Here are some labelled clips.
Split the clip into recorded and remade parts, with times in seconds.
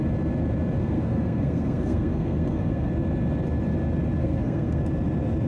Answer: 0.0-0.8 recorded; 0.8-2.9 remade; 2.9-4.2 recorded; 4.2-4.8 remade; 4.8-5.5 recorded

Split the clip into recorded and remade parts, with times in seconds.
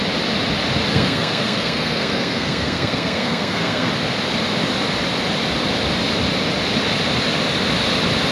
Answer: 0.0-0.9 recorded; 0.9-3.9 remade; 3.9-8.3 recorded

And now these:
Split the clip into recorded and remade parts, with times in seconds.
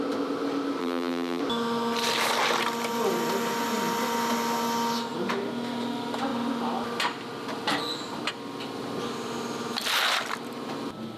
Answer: 0.0-0.8 recorded; 0.8-1.4 remade; 1.4-11.2 recorded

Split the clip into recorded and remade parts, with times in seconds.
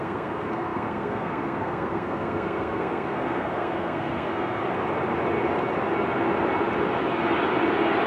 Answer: 0.0-4.6 remade; 4.6-8.1 recorded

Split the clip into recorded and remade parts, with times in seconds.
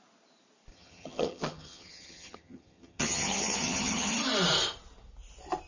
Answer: 0.0-0.7 recorded; 0.7-4.1 remade; 4.1-5.7 recorded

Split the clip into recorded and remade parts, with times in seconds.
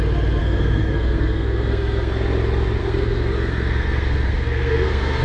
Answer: 0.0-0.4 recorded; 0.4-2.1 remade; 2.1-2.8 recorded; 2.8-5.2 remade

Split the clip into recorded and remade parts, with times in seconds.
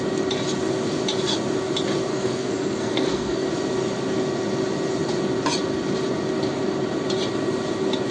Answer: 0.0-2.1 recorded; 2.1-3.5 remade; 3.5-8.1 recorded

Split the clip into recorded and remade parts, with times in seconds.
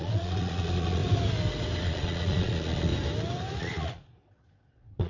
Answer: 0.0-1.0 remade; 1.0-1.8 recorded; 1.8-2.9 remade; 2.9-3.6 recorded; 3.6-5.1 remade